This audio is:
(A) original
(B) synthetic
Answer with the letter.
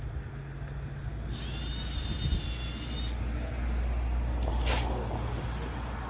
A